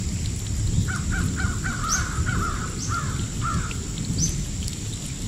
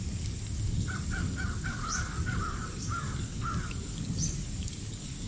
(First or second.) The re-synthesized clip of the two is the second